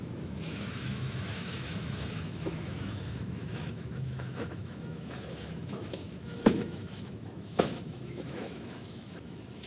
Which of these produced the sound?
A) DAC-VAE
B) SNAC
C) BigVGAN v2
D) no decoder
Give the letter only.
A